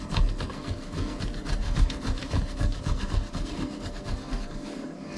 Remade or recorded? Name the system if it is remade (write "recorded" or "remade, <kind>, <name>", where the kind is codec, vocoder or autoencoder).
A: remade, codec, SNAC